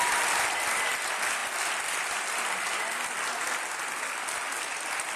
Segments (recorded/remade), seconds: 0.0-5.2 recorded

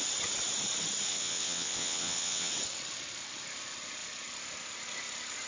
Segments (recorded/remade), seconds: 0.0-1.1 recorded; 1.1-2.5 remade; 2.5-5.5 recorded

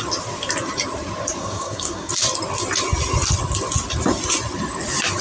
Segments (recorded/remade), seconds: 0.0-1.4 recorded; 1.4-2.1 remade; 2.1-5.2 recorded